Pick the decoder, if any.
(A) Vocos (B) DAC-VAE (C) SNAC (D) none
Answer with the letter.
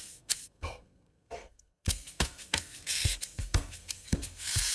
C